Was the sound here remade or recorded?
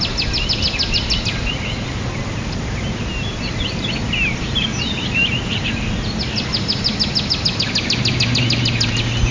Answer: recorded